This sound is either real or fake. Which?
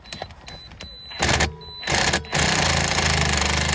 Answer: real